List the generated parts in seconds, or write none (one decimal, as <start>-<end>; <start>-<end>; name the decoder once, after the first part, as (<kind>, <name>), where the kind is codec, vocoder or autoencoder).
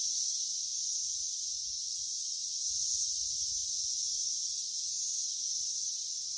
0.7-2.3 (vocoder, Vocos)